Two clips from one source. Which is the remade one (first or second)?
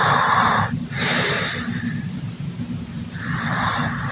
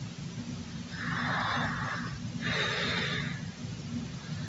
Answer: first